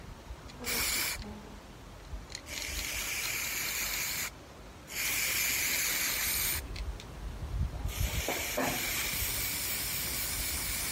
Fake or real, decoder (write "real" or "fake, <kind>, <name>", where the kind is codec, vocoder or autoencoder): real